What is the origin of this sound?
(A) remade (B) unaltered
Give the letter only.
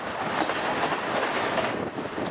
B